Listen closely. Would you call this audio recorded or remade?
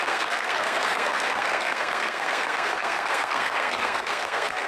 remade